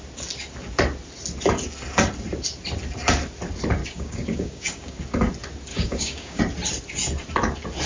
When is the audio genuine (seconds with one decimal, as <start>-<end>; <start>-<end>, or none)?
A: 0.0-3.8; 5.0-5.7; 6.4-7.9